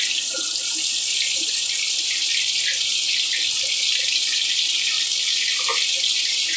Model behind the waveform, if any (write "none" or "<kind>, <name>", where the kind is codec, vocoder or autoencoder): none